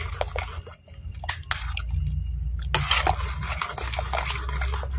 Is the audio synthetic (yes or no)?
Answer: no